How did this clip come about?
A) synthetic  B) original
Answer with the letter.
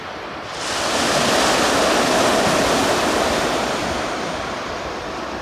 B